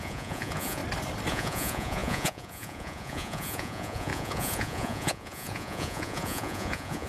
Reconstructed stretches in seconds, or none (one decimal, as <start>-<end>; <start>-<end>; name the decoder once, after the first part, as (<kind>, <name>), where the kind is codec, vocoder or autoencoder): 0.0-0.8 (vocoder, Vocos); 1.3-7.1